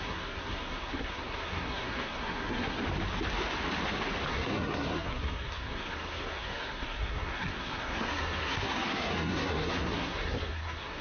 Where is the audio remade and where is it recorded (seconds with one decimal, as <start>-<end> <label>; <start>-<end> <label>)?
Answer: 0.0-2.8 remade; 2.8-4.3 recorded; 4.3-11.0 remade